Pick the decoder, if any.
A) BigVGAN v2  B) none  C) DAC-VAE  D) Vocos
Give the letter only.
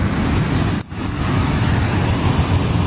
B